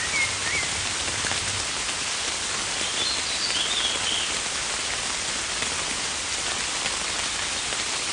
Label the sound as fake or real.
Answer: real